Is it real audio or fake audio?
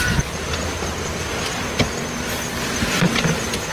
real